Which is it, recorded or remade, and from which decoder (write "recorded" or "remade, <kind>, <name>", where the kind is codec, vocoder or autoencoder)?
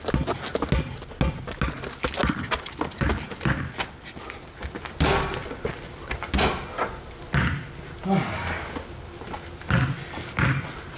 recorded